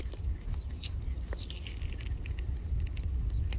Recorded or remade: recorded